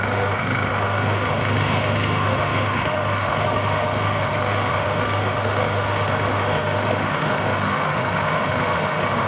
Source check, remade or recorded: remade